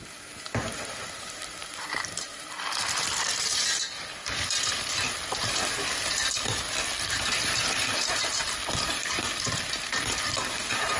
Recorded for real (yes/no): no